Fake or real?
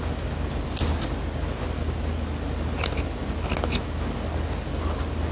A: real